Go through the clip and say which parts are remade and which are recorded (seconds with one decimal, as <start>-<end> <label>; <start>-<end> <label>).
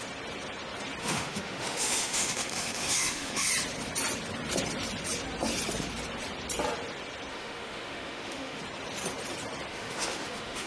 0.0-1.0 recorded; 1.0-3.5 remade; 3.5-7.3 recorded; 7.3-8.6 remade; 8.6-9.7 recorded; 9.7-10.7 remade